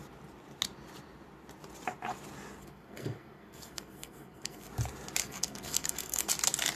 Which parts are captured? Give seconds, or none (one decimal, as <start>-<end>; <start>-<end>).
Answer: 0.0-2.6; 4.7-5.2; 6.3-6.8

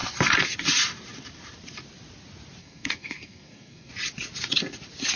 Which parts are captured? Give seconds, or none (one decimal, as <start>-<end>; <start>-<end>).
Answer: 0.0-2.6; 3.9-5.2